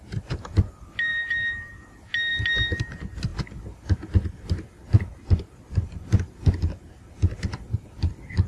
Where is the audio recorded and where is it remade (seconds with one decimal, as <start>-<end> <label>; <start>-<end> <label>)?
0.0-1.1 recorded; 1.1-1.7 remade; 1.7-8.5 recorded